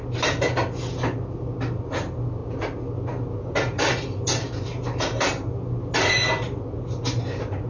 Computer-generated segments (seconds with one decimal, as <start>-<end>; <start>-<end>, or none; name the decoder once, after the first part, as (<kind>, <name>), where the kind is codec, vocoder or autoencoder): none